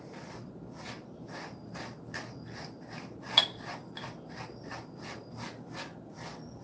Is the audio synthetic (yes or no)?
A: no